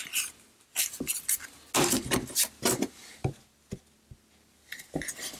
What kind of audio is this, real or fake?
real